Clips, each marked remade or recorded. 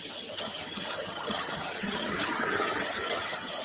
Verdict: remade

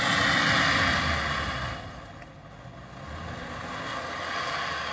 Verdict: recorded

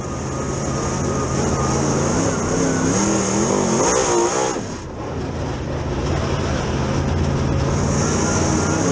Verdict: recorded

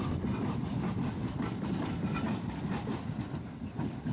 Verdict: recorded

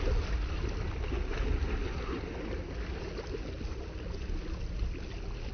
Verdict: recorded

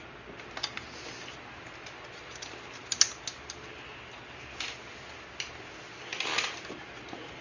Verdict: recorded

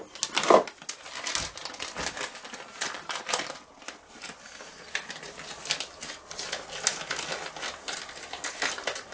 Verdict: recorded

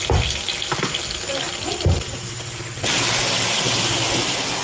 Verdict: recorded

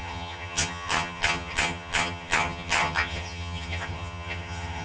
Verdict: remade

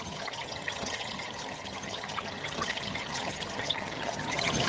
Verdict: remade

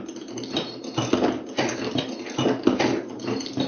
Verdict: recorded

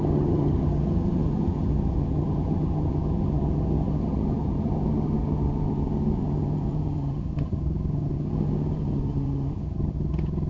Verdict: remade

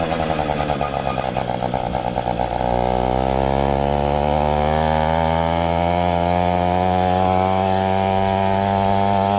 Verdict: recorded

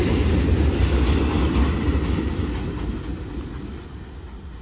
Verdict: recorded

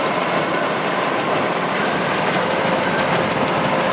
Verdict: recorded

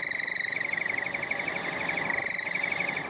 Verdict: recorded